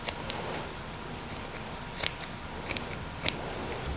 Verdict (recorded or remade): recorded